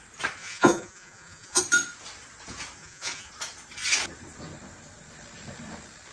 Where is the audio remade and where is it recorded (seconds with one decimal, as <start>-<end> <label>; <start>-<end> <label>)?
0.0-0.4 recorded; 0.4-1.6 remade; 1.6-2.8 recorded; 2.8-3.3 remade; 3.3-6.1 recorded